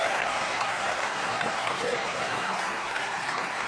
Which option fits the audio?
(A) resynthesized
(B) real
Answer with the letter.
A